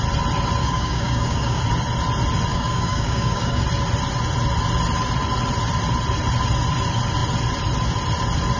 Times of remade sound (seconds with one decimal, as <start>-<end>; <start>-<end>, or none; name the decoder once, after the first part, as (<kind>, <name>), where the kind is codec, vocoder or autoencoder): 0.6-1.6 (codec, DAC); 2.5-3.6